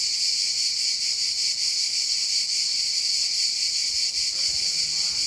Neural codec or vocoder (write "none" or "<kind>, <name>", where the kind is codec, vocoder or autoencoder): none